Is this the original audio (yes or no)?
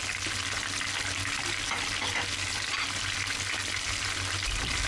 yes